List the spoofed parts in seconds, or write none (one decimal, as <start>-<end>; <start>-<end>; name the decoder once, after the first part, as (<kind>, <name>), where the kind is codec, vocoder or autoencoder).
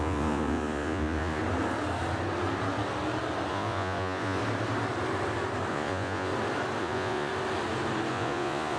0.0-1.4 (vocoder, Vocos); 3.5-4.4; 5.7-6.3; 6.8-7.3; 8.1-8.8